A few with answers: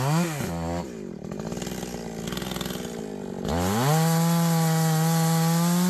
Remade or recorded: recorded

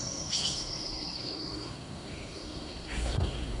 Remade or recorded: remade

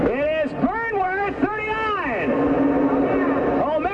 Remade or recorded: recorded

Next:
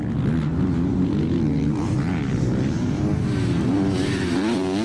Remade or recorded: recorded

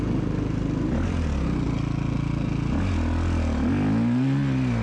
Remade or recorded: recorded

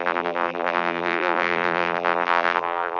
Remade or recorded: remade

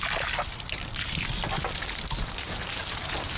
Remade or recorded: recorded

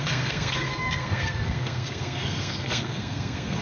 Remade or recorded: remade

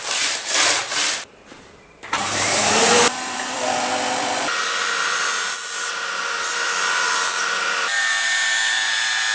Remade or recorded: remade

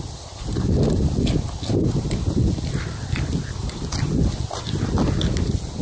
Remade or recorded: recorded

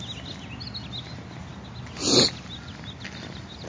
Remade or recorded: recorded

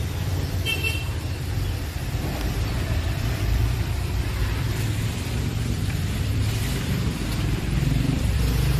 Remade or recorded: remade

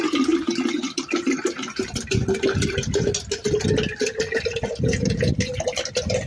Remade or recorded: recorded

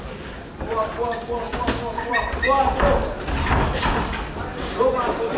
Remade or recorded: recorded